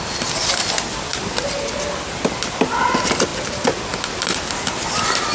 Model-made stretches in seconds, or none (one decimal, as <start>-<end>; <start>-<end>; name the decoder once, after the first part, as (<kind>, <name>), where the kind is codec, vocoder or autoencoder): 1.1-1.7 (vocoder, BigVGAN v2); 3.3-4.0